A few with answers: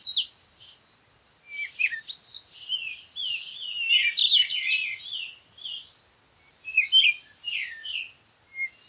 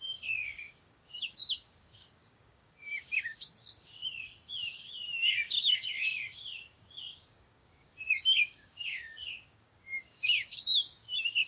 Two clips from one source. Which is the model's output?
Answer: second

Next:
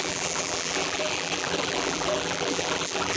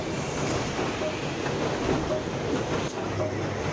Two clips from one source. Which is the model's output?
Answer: first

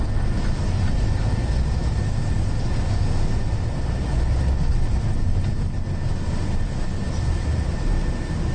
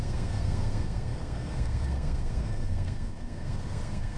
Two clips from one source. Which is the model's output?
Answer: second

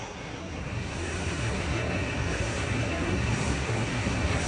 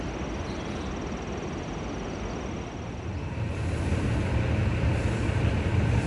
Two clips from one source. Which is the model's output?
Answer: first